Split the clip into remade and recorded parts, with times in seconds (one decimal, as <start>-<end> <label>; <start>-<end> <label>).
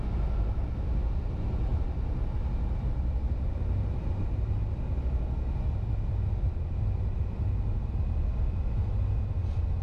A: 0.0-9.8 recorded